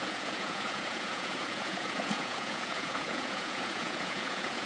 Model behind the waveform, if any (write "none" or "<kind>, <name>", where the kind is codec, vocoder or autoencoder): vocoder, Vocos